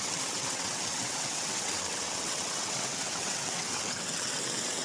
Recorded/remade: remade